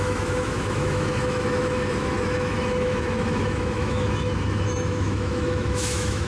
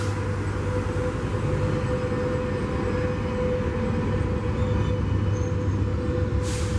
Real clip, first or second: second